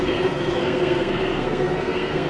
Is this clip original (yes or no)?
no